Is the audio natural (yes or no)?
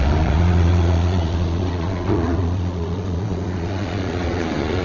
no